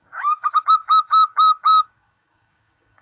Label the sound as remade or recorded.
remade